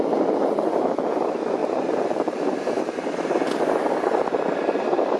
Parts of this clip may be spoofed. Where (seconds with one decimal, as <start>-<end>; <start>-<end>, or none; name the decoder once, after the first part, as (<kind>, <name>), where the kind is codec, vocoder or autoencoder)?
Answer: 1.6-3.4 (vocoder, BigVGAN v2)